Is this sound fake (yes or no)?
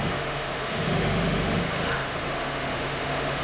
yes